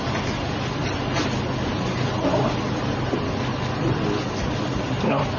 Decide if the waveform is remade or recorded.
recorded